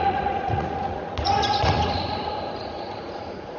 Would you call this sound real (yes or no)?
no